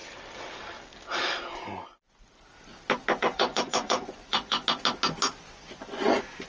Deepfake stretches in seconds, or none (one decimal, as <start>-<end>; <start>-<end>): 3.2-4.6; 5.4-6.5